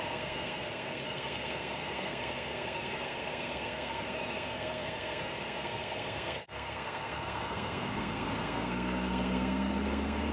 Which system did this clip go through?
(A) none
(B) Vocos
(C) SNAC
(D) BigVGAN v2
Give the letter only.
C